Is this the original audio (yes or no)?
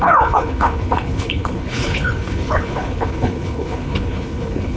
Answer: no